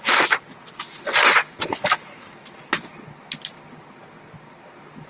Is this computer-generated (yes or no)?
no